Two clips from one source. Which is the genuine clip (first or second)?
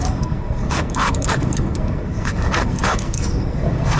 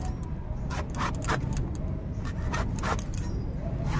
second